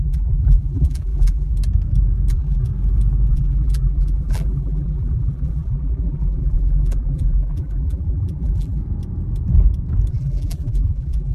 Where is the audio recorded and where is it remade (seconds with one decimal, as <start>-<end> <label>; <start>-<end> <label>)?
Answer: 0.0-1.5 remade; 1.5-2.3 recorded; 2.3-2.7 remade; 2.7-3.3 recorded; 3.3-8.8 remade; 8.8-10.1 recorded; 10.1-11.3 remade